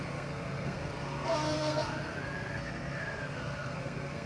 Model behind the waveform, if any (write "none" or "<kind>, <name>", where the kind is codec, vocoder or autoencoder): codec, SNAC